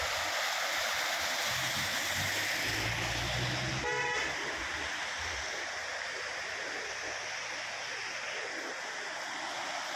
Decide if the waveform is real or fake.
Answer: real